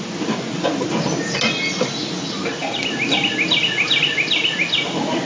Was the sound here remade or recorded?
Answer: recorded